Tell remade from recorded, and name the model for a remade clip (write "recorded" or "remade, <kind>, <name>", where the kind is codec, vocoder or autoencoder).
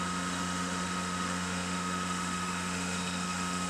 remade, autoencoder, DAC-VAE